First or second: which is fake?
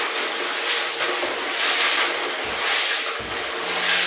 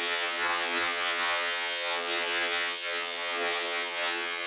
second